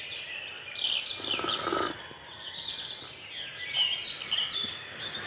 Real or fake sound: real